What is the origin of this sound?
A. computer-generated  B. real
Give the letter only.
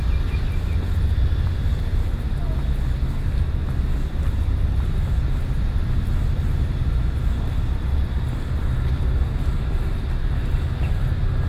B